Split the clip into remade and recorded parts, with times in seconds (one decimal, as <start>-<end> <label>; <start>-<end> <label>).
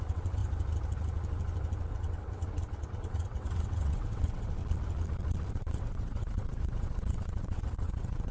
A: 0.0-0.4 remade; 0.4-1.9 recorded; 1.9-4.6 remade; 4.6-5.5 recorded; 5.5-8.3 remade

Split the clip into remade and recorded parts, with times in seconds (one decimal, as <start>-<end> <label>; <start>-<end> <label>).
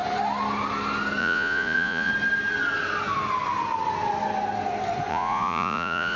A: 0.0-1.2 recorded; 1.2-2.1 remade; 2.1-5.1 recorded; 5.1-6.2 remade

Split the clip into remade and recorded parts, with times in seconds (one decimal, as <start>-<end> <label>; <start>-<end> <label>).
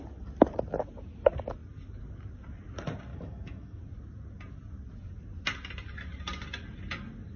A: 0.0-3.1 recorded; 3.1-3.8 remade; 3.8-7.4 recorded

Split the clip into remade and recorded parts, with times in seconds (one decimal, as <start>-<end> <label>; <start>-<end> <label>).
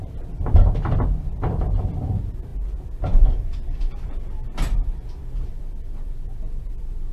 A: 0.0-7.1 remade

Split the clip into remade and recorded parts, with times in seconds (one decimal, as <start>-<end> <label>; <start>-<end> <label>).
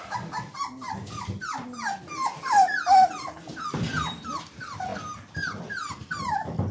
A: 0.0-1.5 remade; 1.5-2.5 recorded; 2.5-4.9 remade; 4.9-5.6 recorded; 5.6-6.7 remade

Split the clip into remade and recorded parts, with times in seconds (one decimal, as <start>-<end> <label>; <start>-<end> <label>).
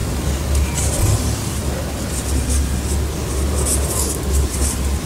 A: 0.0-1.1 recorded; 1.1-1.6 remade; 1.6-4.5 recorded; 4.5-5.1 remade